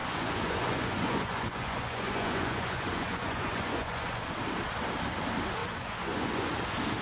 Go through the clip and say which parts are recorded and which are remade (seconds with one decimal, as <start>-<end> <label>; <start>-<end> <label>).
0.0-4.2 remade; 4.2-5.6 recorded; 5.6-6.5 remade; 6.5-7.0 recorded